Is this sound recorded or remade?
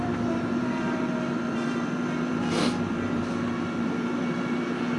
remade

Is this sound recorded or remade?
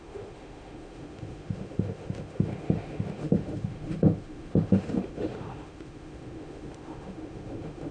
remade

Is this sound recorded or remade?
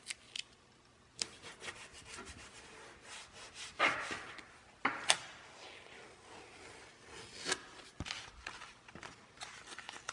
recorded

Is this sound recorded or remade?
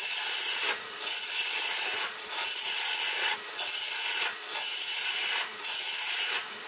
remade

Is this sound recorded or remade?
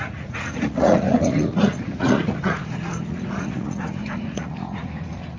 remade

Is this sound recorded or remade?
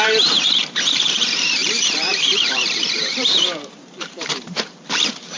remade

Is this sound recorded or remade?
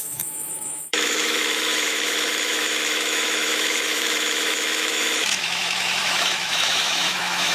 remade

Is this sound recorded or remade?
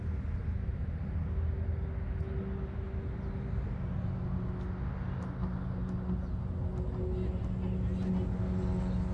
recorded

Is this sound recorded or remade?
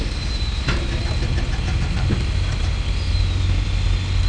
recorded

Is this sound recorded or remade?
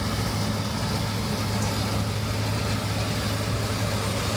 recorded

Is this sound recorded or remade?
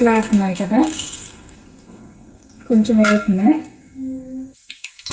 remade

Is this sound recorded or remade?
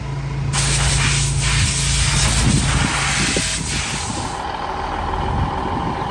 recorded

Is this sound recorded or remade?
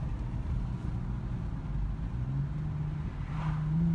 recorded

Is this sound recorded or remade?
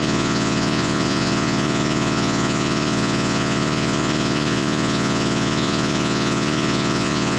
remade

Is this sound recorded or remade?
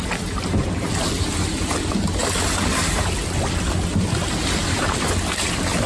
recorded